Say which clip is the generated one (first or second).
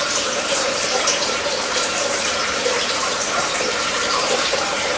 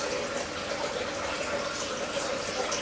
first